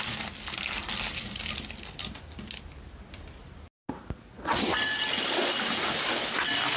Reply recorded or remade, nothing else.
recorded